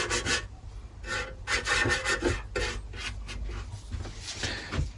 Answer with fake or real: real